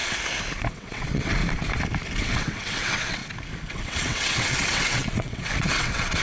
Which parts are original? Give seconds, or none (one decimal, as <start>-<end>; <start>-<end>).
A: 0.0-0.7; 1.4-2.2; 3.2-3.7